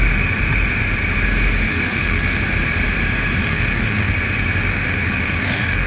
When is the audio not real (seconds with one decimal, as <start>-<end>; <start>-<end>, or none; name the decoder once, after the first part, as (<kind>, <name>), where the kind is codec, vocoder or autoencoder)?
1.7-2.4 (autoencoder, DAC-VAE); 3.4-4.1; 4.7-5.9